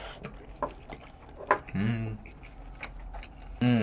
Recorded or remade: recorded